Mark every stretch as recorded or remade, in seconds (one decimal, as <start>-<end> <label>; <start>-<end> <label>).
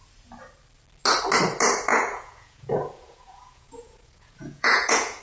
0.0-1.9 recorded; 1.9-5.2 remade